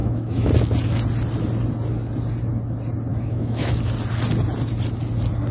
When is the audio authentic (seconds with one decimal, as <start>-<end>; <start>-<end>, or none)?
0.5-3.1; 3.7-5.5